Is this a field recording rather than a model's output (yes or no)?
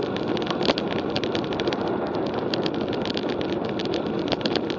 yes